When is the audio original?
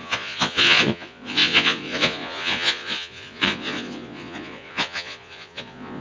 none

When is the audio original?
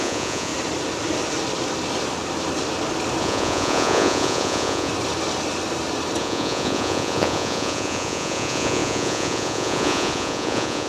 0.5-3.2; 4.9-6.2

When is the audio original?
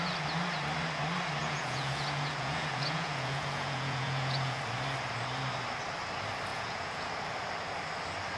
0.0-1.4; 4.6-6.5; 7.1-8.4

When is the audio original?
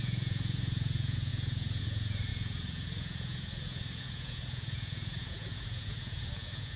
none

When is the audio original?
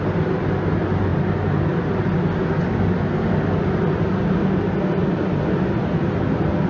0.0-6.7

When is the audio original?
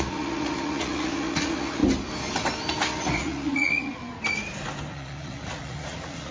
1.8-3.0; 4.0-4.9